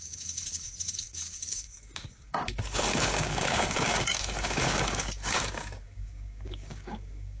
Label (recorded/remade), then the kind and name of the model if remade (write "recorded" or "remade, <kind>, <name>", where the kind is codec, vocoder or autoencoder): remade, codec, DAC